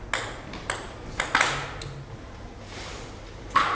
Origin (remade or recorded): recorded